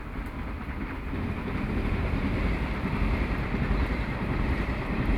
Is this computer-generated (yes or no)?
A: yes